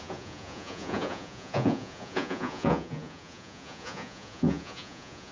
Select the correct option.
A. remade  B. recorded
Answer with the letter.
A